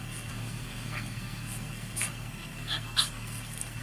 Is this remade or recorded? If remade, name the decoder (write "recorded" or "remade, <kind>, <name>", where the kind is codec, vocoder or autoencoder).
remade, codec, SNAC